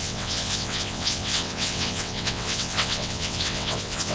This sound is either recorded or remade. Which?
remade